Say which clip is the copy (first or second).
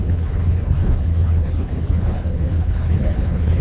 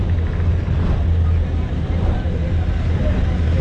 first